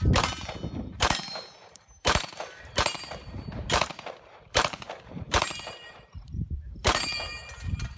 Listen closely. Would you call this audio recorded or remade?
remade